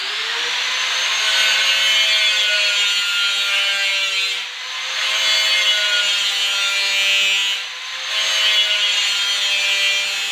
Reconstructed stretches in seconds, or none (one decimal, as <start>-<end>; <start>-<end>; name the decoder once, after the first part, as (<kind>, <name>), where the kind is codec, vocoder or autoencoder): none

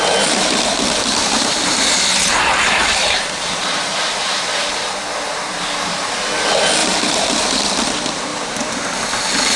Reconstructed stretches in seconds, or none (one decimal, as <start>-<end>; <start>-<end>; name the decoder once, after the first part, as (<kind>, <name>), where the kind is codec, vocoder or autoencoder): 1.2-4.8 (vocoder, BigVGAN v2); 6.8-7.4; 8.3-8.8

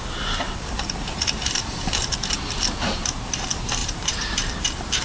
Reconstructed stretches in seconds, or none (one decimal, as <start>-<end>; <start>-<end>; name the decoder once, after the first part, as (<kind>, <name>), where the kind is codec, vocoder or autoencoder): 1.4-2.1 (vocoder, BigVGAN v2); 3.8-4.6

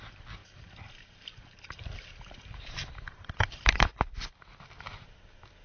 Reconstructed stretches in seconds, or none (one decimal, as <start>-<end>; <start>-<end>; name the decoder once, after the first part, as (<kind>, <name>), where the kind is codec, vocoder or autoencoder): 0.0-5.6 (vocoder, BigVGAN v2)